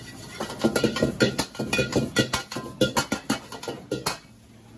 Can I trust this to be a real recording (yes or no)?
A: yes